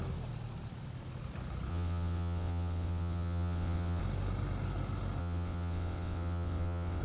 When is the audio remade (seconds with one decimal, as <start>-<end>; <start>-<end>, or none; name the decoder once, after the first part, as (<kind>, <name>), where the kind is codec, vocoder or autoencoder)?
1.7-4.0 (vocoder, WaveNeXt); 5.2-7.0

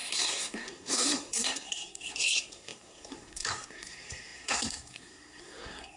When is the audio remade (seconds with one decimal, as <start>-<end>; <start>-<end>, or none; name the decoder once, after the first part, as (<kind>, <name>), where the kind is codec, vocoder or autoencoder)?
0.0-6.0 (codec, SNAC)

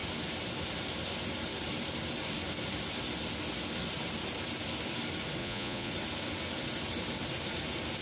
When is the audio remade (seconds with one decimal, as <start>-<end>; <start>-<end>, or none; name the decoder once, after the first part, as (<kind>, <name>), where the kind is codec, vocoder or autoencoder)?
5.4-5.9 (vocoder, Vocos)

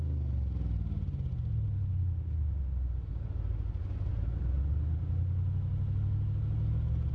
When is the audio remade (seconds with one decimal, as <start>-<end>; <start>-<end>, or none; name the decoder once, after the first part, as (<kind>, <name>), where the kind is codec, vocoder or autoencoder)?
none

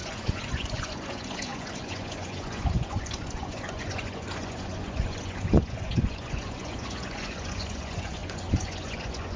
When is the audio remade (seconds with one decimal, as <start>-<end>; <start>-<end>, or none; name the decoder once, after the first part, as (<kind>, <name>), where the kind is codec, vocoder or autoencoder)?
0.0-9.4 (vocoder, Vocos)

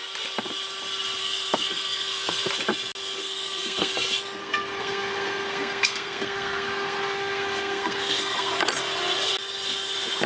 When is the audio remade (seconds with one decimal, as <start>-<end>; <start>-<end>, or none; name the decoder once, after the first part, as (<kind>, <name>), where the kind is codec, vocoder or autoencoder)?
1.2-2.5 (codec, SNAC); 3.2-3.9; 4.4-8.5

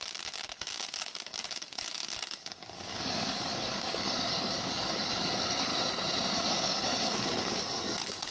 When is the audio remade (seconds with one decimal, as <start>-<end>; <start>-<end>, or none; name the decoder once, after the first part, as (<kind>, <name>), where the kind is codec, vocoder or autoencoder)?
0.0-5.7 (codec, DAC); 6.3-8.3

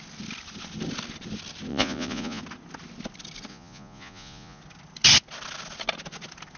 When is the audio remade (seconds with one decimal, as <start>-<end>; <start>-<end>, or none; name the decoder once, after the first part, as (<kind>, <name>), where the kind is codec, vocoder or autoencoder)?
1.7-2.4 (vocoder, Vocos); 3.5-4.6